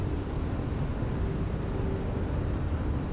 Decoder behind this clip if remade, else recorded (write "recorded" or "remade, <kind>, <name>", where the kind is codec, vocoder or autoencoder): recorded